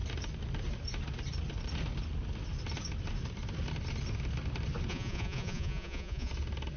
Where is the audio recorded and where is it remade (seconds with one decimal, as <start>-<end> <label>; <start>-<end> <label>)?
0.0-4.9 recorded; 4.9-6.3 remade; 6.3-6.8 recorded